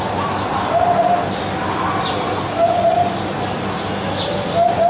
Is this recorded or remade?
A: recorded